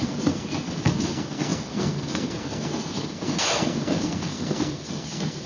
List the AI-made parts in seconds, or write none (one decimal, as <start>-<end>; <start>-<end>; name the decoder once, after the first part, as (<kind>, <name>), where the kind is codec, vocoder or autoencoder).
0.0-5.5 (codec, SNAC)